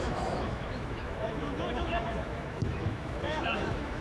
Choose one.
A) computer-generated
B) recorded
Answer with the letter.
A